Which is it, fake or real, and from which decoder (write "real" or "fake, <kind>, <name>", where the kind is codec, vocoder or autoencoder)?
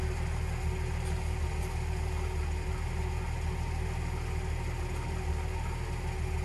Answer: real